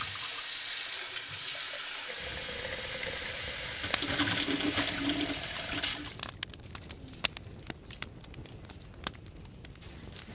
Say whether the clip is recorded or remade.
recorded